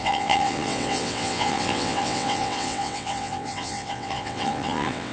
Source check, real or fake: fake